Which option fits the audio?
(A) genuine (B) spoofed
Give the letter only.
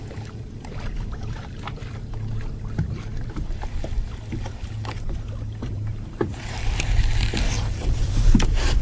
B